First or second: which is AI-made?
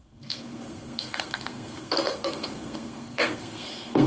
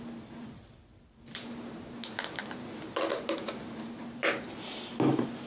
first